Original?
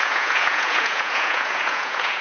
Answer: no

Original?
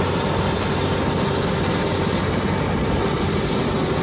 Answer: yes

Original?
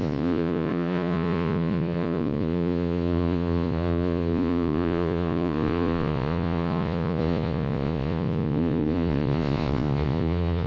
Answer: no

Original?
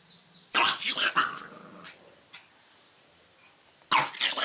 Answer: yes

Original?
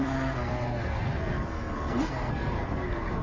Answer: no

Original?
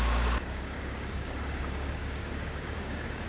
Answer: no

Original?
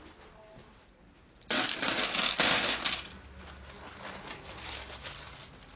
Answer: yes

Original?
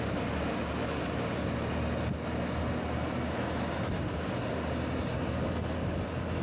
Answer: yes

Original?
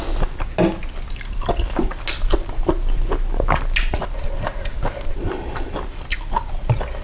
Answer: yes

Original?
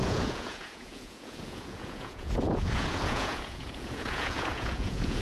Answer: no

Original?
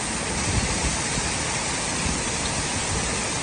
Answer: yes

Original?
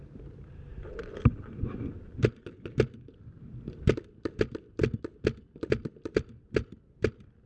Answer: no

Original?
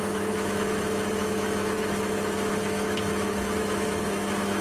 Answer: no